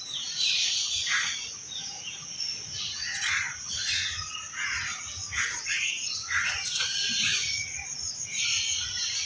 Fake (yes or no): yes